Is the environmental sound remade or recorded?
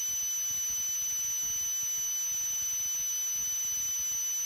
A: recorded